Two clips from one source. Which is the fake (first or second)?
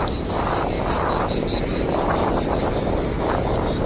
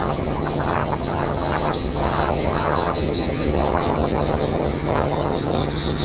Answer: second